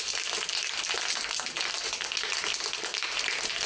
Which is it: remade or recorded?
recorded